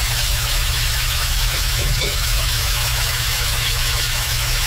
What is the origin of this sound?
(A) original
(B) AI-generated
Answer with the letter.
B